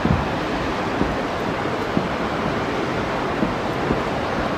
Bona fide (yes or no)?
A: yes